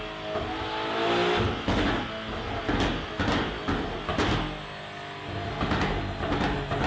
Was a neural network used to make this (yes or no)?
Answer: no